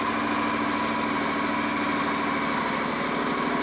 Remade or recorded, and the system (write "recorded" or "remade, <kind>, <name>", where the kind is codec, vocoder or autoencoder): recorded